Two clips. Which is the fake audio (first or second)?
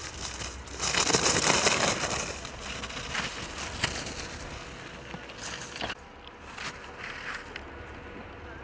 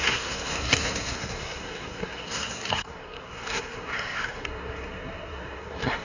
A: second